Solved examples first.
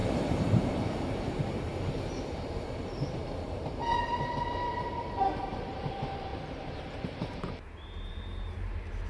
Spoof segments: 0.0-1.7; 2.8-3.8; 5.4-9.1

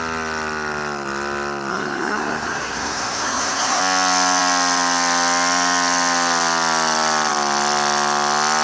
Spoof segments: 1.7-3.8

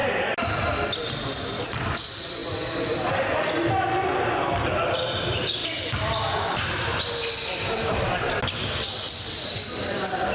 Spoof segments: none